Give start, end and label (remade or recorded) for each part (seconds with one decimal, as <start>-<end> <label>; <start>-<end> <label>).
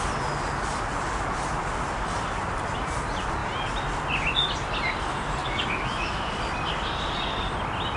0.0-5.4 recorded; 5.4-6.3 remade; 6.3-8.0 recorded